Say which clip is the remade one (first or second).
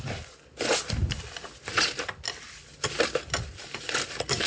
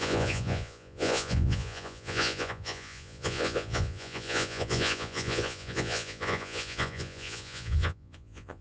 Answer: second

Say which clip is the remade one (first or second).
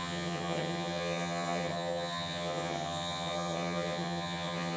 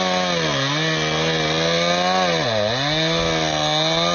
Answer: first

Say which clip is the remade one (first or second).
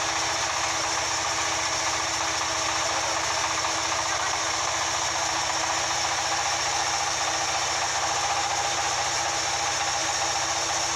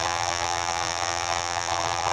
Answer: second